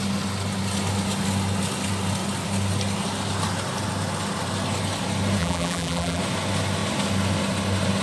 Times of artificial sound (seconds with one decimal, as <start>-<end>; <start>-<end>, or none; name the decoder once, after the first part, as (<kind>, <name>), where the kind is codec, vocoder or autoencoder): 5.4-6.2 (vocoder, BigVGAN v2)